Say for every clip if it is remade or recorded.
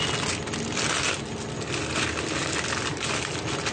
recorded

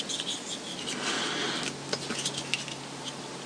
recorded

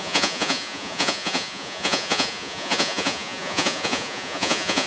remade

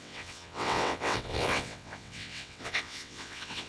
remade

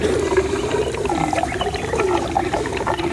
recorded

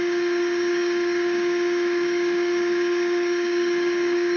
remade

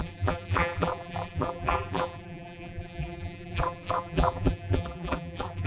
remade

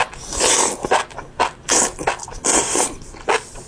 recorded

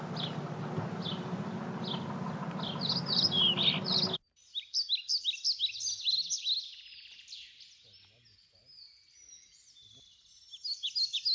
recorded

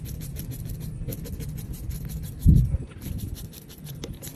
recorded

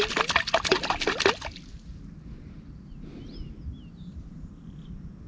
recorded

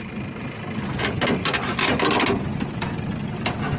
recorded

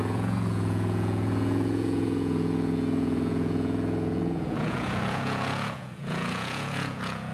remade